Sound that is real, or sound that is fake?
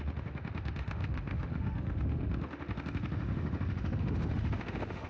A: fake